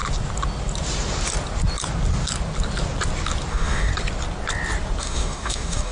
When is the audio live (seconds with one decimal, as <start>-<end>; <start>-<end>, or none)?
0.0-3.5; 3.9-5.0